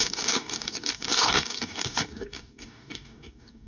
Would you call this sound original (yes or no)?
no